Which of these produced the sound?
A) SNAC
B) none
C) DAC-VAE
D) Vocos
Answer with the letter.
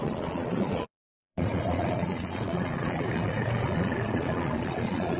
D